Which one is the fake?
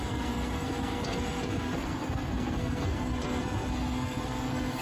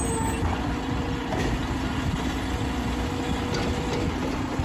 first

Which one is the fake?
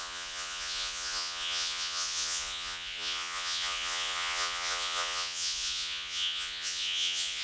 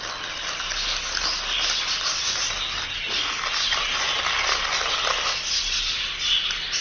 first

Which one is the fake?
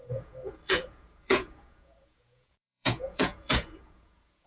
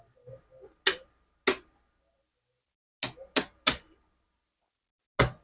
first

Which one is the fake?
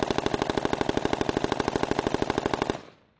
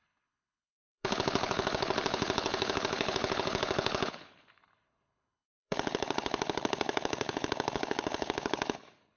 second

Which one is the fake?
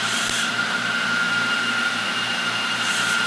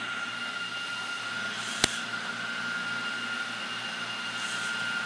first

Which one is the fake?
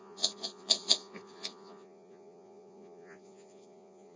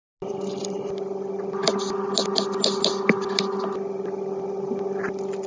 first